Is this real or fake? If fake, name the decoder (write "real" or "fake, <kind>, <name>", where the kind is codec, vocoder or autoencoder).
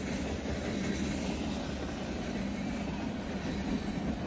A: real